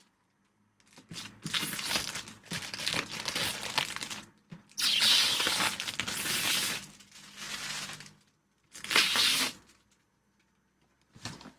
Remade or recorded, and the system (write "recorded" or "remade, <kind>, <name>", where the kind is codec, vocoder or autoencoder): recorded